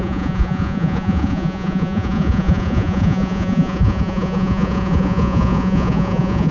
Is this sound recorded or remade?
remade